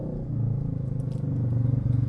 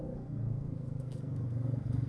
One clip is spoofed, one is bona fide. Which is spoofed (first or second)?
second